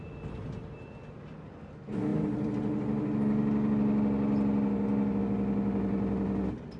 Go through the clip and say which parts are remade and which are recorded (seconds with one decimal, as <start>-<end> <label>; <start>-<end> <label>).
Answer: 0.0-6.8 recorded